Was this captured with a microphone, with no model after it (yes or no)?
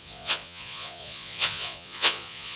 no